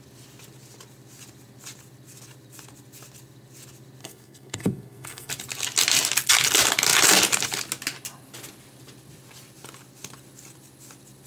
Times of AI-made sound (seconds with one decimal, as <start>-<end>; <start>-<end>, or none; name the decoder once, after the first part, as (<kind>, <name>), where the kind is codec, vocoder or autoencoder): 4.0-5.3 (codec, SNAC)